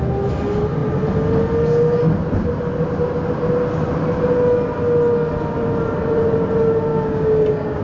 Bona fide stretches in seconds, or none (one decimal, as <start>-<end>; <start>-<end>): 0.0-6.9